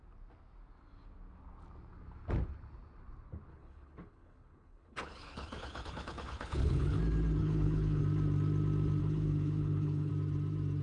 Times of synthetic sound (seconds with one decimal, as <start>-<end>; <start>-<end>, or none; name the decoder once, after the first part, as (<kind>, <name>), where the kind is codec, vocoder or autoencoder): 3.5-7.0 (codec, HILCodec); 7.4-8.0; 9.0-10.1